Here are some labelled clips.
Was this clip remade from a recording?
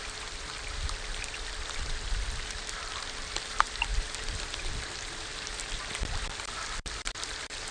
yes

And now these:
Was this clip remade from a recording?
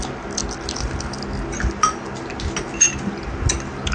no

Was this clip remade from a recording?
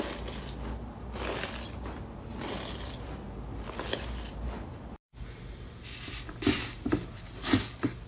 no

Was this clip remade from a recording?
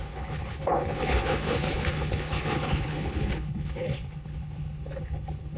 yes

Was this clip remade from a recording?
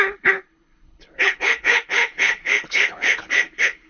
yes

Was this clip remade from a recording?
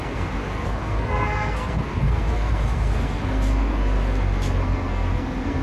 yes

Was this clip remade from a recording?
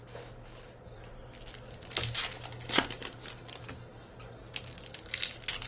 no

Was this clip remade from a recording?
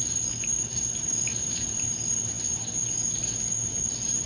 no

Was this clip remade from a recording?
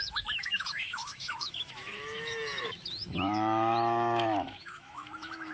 yes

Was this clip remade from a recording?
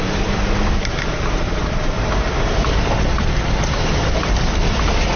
yes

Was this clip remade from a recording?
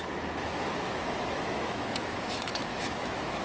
yes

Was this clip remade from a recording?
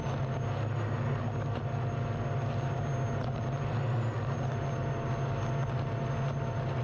no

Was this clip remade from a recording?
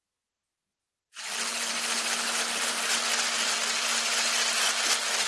no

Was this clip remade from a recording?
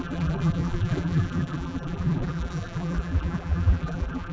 yes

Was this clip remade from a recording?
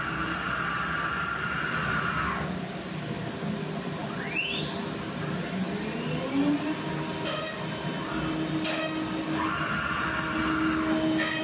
no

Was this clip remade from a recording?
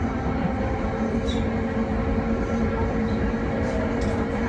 yes